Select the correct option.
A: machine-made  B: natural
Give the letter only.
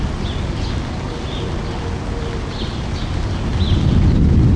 B